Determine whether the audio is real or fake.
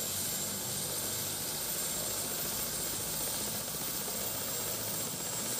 real